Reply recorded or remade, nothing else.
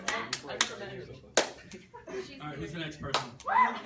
recorded